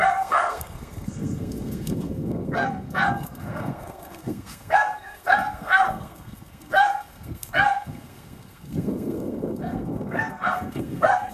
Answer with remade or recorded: remade